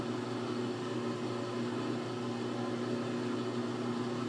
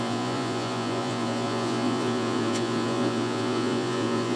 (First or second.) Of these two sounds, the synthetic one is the second